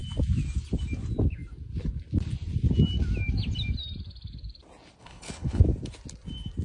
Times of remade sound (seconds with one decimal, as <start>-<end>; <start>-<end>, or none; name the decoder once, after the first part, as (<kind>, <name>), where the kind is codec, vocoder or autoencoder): 5.0-5.6 (codec, HILCodec)